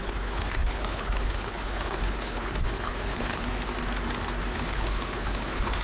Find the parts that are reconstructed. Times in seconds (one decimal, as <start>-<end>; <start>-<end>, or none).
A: 0.0-3.7; 4.5-5.8